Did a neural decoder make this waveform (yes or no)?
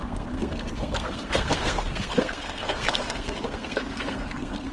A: yes